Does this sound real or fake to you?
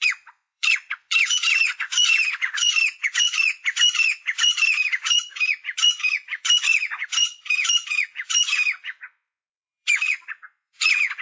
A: fake